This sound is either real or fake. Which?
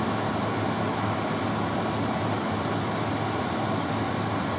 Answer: real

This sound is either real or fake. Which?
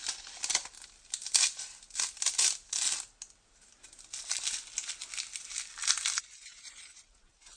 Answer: real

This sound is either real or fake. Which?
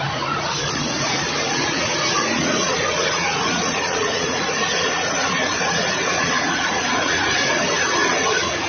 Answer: fake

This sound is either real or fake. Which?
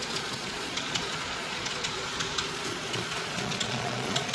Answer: fake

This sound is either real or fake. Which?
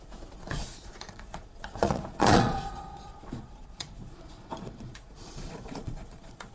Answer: fake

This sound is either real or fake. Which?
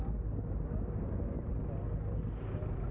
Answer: real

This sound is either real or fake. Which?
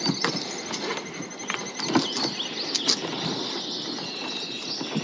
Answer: real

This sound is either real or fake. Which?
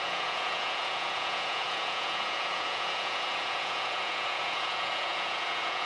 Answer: fake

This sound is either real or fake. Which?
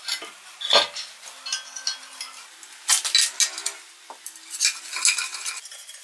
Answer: real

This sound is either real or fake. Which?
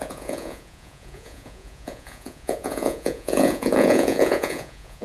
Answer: fake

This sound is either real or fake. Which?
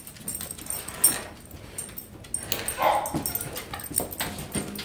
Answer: real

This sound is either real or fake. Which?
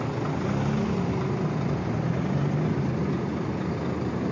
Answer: real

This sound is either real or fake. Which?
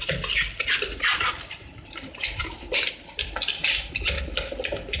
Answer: real